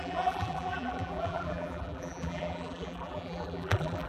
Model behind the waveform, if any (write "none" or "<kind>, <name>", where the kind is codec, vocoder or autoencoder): vocoder, BigVGAN v2